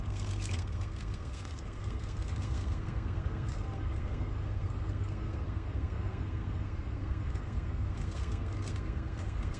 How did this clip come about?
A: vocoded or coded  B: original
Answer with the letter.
A